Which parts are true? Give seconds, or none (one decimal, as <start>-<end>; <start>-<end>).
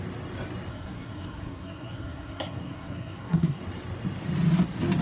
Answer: 0.0-0.7; 3.6-5.0